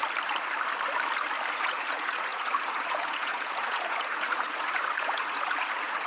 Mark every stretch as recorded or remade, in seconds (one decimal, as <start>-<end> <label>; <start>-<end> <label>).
0.0-1.5 recorded; 1.5-6.1 remade